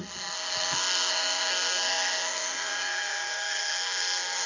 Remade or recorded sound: remade